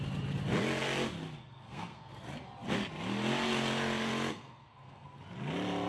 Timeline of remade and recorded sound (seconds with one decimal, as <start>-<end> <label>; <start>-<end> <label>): 0.0-1.4 recorded; 1.4-2.2 remade; 2.2-4.3 recorded; 4.3-5.2 remade; 5.2-5.9 recorded